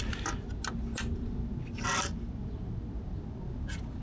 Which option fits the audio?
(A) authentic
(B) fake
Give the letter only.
A